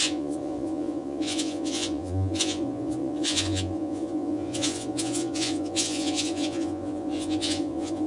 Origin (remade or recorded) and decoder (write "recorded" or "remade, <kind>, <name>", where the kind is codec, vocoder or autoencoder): remade, vocoder, Vocos